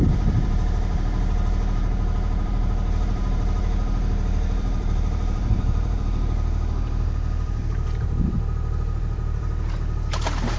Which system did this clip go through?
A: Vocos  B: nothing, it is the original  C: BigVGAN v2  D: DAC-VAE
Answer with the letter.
C